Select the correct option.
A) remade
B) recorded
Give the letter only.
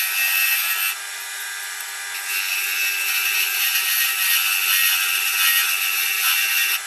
B